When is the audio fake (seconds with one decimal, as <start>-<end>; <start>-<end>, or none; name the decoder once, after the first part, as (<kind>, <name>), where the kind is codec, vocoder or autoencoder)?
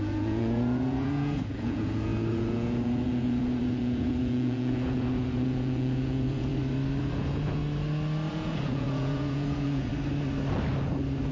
0.0-6.5 (vocoder, Vocos); 7.0-7.6; 8.3-9.9